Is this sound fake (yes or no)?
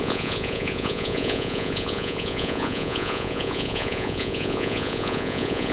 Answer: yes